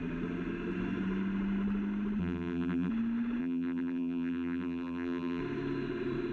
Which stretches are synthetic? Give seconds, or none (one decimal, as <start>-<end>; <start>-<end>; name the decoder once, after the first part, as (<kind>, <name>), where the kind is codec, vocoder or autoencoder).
2.2-2.9 (vocoder, BigVGAN v2); 3.4-5.4